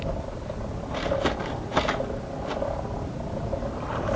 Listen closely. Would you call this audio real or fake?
real